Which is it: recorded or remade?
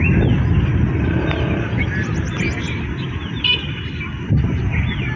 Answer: recorded